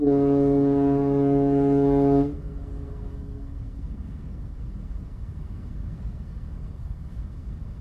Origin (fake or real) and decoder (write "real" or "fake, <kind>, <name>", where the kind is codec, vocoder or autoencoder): fake, codec, SNAC